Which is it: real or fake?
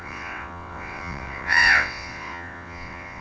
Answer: fake